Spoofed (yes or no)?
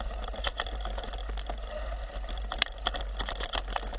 no